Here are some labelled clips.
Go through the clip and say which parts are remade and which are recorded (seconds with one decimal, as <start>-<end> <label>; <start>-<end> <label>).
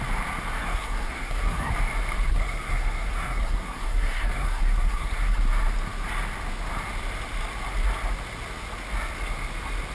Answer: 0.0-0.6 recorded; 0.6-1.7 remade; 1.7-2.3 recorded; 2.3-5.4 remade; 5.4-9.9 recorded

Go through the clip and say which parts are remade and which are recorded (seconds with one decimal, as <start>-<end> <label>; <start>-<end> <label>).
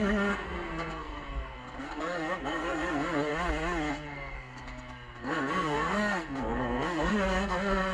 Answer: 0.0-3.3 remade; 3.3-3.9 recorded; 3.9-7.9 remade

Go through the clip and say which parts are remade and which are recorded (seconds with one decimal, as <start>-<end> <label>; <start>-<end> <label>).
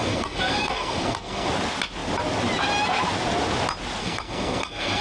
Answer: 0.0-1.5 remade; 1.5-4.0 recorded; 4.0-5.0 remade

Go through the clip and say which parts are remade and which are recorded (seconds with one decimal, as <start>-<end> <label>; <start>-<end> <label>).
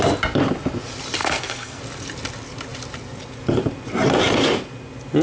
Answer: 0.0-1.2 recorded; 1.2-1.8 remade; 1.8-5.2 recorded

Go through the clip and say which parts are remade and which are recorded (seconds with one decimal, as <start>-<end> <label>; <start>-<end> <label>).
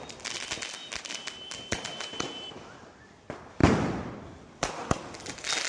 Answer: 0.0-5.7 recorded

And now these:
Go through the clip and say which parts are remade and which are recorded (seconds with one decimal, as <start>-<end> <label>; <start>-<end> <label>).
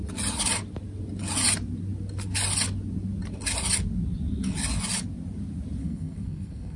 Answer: 0.0-5.8 recorded; 5.8-6.8 remade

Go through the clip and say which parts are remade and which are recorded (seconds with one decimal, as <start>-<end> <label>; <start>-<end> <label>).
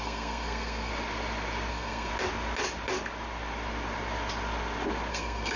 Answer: 0.0-0.9 remade; 0.9-1.7 recorded; 1.7-2.1 remade; 2.1-5.1 recorded; 5.1-5.6 remade